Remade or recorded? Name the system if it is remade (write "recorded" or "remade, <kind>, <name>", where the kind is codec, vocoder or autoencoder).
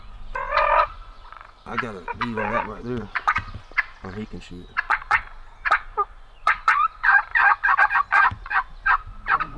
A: remade, vocoder, Vocos